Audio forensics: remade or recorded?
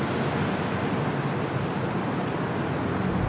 recorded